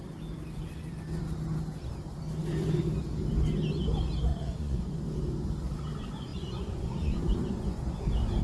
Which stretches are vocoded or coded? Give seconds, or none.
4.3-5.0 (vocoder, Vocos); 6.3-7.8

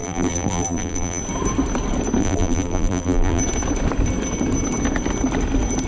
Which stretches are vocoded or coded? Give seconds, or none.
0.0-1.2 (vocoder, BigVGAN v2); 2.2-3.4

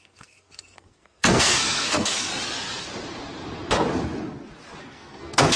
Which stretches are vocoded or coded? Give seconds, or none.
0.0-2.3 (codec, SNAC); 4.8-5.6